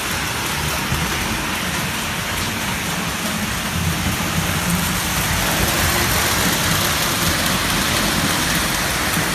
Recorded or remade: recorded